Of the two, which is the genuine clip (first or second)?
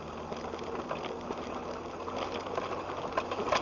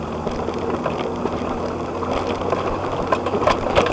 first